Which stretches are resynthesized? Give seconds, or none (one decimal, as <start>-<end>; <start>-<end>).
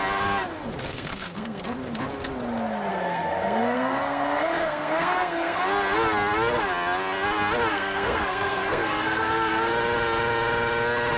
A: 0.9-1.6; 2.9-5.6; 7.7-9.7